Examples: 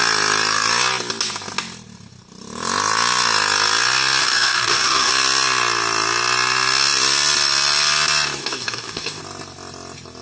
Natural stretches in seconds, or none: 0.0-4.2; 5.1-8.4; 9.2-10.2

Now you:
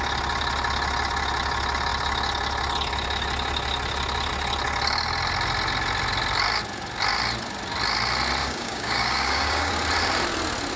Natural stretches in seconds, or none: 0.0-8.4; 9.7-10.8

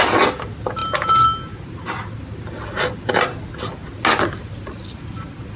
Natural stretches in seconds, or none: 0.0-5.6

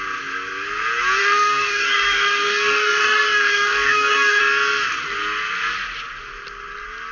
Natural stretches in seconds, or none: 0.0-1.2; 4.4-7.1

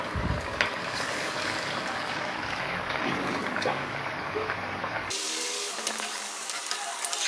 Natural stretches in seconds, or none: 6.6-7.3

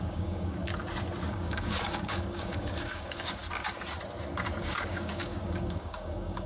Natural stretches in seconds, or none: 0.7-1.3; 3.4-4.6